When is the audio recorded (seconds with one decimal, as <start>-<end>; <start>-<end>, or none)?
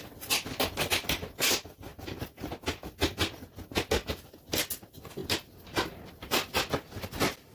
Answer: 0.0-7.5